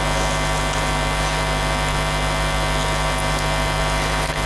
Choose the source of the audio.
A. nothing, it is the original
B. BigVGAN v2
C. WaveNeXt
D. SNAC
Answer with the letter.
A